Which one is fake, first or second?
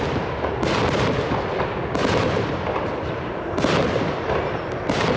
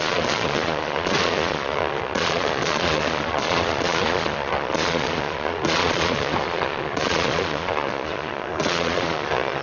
second